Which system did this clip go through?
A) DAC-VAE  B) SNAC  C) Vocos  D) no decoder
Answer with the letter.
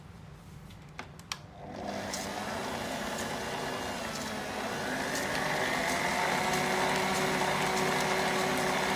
D